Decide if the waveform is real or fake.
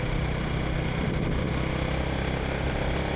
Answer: real